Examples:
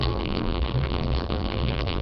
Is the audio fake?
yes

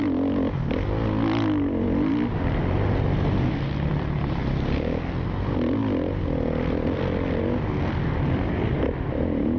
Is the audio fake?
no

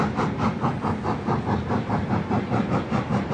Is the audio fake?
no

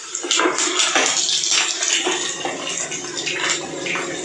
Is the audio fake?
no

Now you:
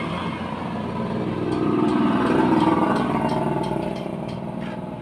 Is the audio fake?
no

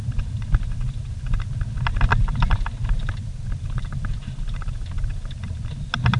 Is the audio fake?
no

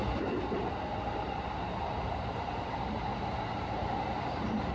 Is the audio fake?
yes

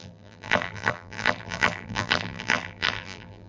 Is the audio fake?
yes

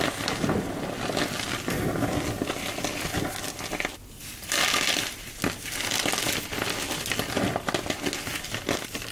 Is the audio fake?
no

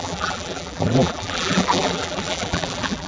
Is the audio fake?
yes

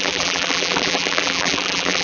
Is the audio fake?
yes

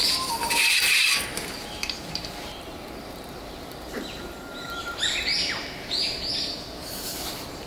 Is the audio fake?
yes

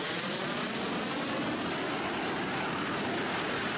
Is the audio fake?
no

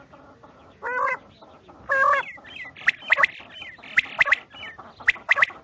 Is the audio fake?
no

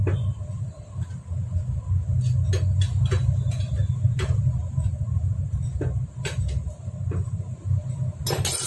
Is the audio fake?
no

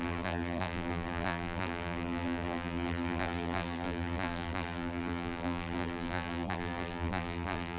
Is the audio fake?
yes